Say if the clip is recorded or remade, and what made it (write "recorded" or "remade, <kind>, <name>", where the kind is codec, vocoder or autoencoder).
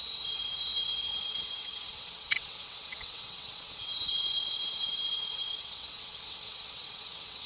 remade, vocoder, WaveNeXt